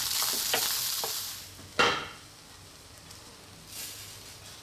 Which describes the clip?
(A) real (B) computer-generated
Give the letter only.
A